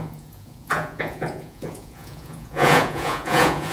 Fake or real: fake